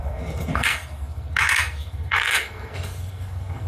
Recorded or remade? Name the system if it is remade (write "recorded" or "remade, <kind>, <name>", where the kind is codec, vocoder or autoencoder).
remade, codec, SNAC